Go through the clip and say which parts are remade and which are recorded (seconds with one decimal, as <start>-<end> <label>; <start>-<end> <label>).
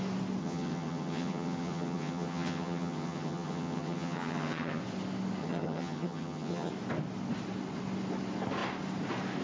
0.0-0.4 recorded; 0.4-4.8 remade; 4.8-5.4 recorded; 5.4-6.7 remade; 6.7-9.4 recorded